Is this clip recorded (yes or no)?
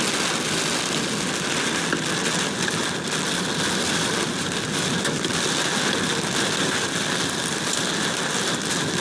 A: yes